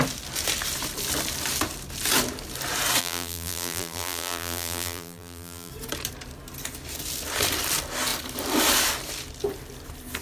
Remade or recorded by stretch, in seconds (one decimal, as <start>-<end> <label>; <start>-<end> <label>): 0.0-3.0 recorded; 3.0-5.7 remade; 5.7-10.2 recorded